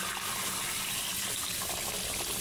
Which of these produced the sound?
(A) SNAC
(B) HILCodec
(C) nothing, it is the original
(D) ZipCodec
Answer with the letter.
C